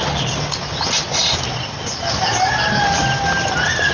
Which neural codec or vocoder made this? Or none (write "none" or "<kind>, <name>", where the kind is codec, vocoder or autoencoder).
none